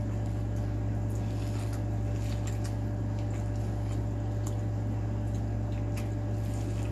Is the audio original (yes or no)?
yes